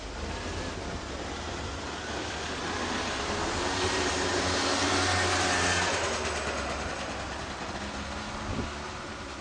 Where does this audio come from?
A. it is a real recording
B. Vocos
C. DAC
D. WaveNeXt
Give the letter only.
A